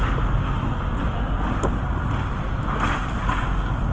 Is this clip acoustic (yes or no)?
yes